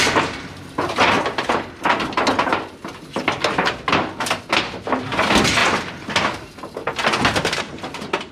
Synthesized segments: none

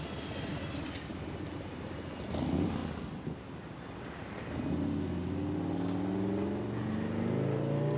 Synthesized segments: none

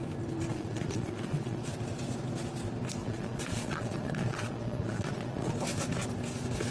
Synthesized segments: 0.5-1.6 (vocoder, Vocos); 3.0-5.5